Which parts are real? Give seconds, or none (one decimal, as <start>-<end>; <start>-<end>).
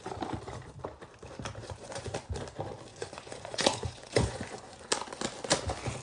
0.0-1.6; 2.1-2.9; 4.9-6.0